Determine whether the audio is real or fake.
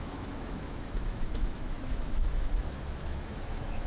fake